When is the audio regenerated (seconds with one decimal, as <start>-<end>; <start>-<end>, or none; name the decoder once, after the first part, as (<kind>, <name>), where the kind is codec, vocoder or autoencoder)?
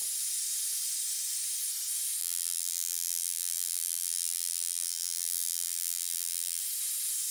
2.2-6.6 (vocoder, BigVGAN v2)